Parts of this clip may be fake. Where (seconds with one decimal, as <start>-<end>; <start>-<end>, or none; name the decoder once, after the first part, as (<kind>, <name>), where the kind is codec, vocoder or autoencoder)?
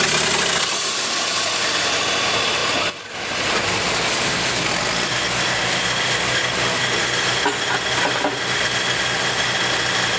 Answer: none